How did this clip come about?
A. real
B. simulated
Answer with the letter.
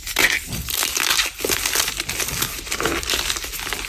A